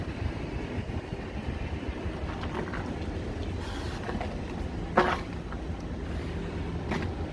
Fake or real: real